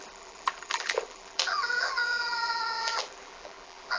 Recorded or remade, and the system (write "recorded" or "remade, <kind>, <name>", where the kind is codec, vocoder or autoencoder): remade, vocoder, BigVGAN v2